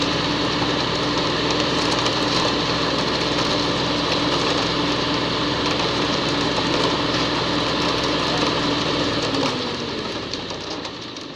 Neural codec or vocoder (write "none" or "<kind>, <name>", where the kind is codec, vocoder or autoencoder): vocoder, BigVGAN v2